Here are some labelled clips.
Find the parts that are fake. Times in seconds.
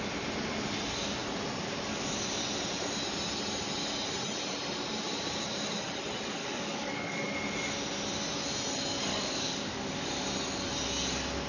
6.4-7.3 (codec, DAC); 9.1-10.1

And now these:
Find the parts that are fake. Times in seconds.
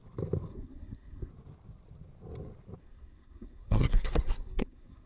0.5-1.3 (codec, SNAC); 2.8-5.1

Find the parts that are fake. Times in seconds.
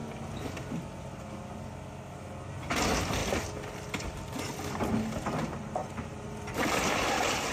5.8-6.7 (vocoder, BigVGAN v2)